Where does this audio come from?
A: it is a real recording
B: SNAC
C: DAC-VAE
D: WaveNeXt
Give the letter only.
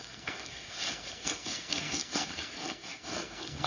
B